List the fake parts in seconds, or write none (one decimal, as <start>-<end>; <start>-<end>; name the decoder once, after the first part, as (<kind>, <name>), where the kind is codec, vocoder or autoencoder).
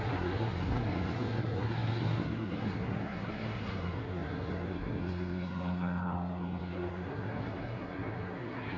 0.0-8.8 (codec, SNAC)